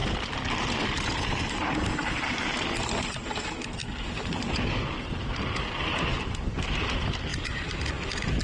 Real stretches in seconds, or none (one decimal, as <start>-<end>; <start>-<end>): 0.0-8.4